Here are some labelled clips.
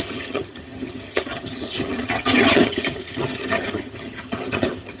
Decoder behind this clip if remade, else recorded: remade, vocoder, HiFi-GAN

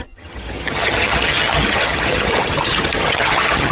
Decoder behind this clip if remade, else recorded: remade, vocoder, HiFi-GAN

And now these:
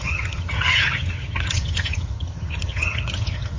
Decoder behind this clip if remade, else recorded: remade, vocoder, HiFi-GAN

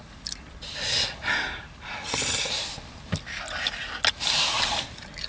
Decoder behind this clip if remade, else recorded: recorded